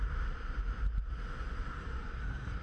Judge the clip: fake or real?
fake